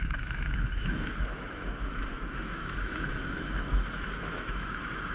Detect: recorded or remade remade